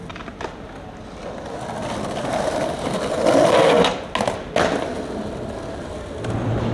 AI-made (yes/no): no